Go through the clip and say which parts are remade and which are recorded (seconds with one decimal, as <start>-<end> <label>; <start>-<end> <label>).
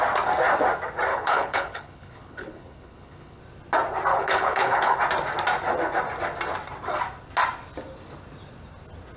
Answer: 0.0-1.1 recorded; 1.1-3.4 remade; 3.4-4.1 recorded; 4.1-5.0 remade; 5.0-9.2 recorded